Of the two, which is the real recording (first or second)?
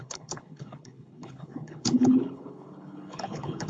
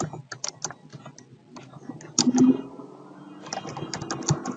second